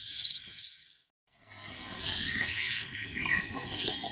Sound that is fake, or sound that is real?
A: fake